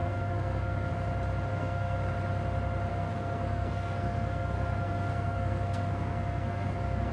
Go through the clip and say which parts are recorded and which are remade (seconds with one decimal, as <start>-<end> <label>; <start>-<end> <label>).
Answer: 0.0-0.9 remade; 0.9-1.5 recorded; 1.5-2.1 remade; 2.1-2.9 recorded; 2.9-7.1 remade